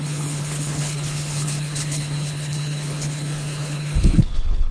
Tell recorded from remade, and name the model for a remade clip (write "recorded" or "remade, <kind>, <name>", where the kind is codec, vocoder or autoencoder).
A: remade, codec, HILCodec